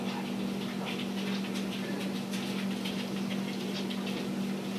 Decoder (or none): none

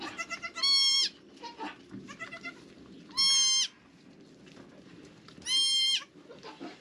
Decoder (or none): none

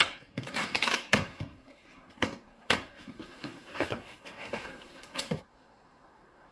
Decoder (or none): codec, SNAC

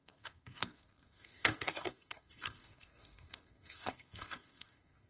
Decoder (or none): codec, SNAC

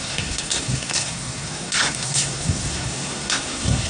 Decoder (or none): codec, SNAC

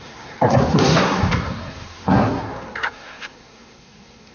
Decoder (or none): codec, SNAC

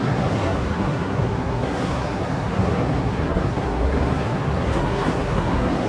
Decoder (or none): codec, SNAC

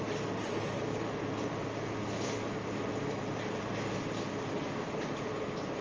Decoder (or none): none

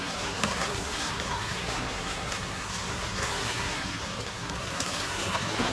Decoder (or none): codec, SNAC